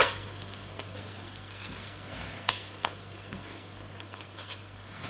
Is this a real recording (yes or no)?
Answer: no